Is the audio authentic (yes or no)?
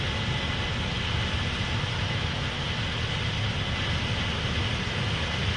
yes